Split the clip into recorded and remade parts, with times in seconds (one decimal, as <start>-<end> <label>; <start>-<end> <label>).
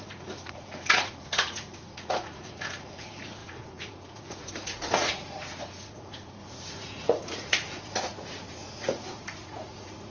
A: 0.0-10.1 remade